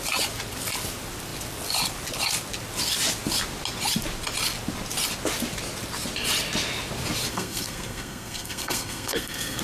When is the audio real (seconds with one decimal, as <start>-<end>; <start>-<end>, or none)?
0.0-7.3